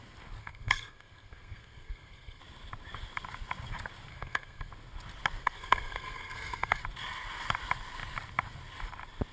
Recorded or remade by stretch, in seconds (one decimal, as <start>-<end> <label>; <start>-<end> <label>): 0.0-0.4 recorded; 0.4-2.4 remade; 2.4-4.1 recorded; 4.1-4.7 remade; 4.7-5.4 recorded; 5.4-6.8 remade; 6.8-9.3 recorded

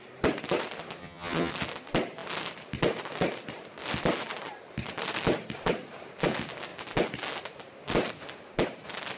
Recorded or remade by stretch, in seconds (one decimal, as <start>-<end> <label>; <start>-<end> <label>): 0.0-1.0 recorded; 1.0-1.5 remade; 1.5-9.2 recorded

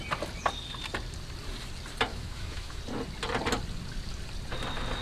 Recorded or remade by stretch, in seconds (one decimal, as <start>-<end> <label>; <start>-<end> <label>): 0.0-2.1 recorded; 2.1-2.8 remade; 2.8-5.0 recorded

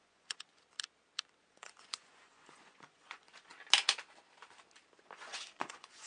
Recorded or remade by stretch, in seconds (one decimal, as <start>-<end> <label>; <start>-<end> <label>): 0.0-0.6 remade; 0.6-1.4 recorded; 1.4-3.5 remade; 3.5-5.0 recorded; 5.0-6.1 remade

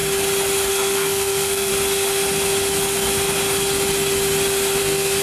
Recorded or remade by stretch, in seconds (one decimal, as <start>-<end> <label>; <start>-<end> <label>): 0.0-0.7 recorded; 0.7-1.7 remade; 1.7-4.8 recorded; 4.8-5.2 remade

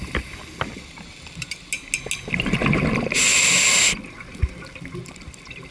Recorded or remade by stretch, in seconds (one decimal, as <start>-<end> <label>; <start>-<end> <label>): 0.0-5.7 recorded